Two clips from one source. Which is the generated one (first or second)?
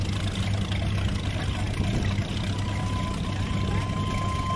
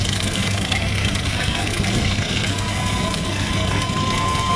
second